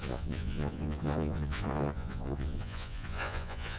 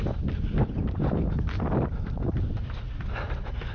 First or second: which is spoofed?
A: first